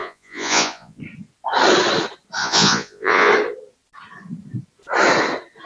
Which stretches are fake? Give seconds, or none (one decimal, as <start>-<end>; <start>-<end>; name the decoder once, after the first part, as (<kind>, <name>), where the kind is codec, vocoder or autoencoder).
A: 0.0-1.0 (vocoder, Vocos); 2.4-3.3